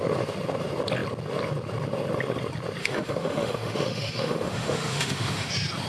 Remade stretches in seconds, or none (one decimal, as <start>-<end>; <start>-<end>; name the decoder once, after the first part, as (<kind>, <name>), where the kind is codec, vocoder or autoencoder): 2.8-5.5 (autoencoder, DAC-VAE)